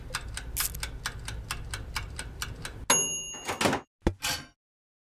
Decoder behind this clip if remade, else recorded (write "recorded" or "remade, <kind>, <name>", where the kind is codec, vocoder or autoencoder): recorded